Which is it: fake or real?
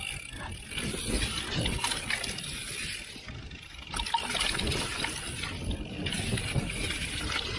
real